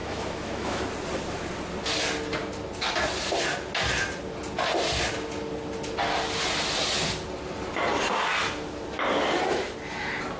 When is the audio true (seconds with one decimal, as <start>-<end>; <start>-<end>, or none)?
0.8-10.4